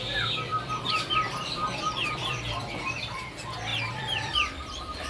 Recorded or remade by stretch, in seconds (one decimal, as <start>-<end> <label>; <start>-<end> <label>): 0.0-0.5 recorded; 0.5-3.0 remade; 3.0-3.7 recorded; 3.7-5.1 remade